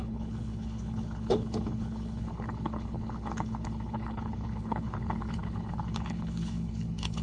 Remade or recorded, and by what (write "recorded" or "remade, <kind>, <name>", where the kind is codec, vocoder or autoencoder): remade, codec, HILCodec